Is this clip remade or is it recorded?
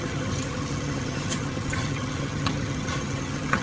remade